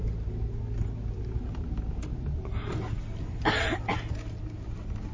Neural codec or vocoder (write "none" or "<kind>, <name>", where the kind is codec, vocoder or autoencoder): none